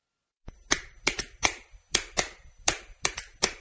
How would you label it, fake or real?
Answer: real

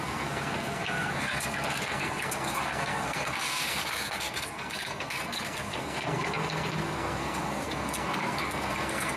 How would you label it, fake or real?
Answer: fake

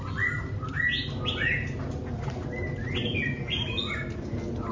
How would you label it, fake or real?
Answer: real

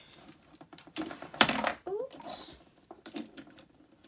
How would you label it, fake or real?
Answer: fake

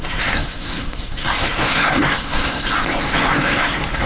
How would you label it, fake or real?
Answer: fake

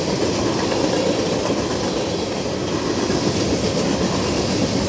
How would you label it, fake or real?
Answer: real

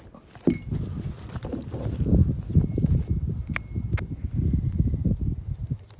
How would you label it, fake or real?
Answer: real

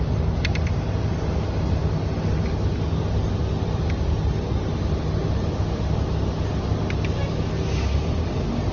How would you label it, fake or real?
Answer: real